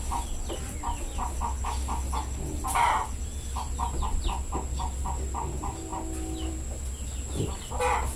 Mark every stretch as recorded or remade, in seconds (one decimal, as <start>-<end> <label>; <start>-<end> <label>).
0.0-8.2 recorded